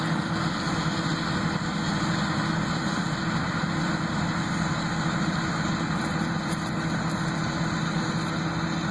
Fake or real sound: real